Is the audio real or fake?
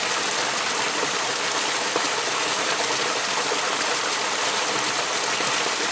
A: real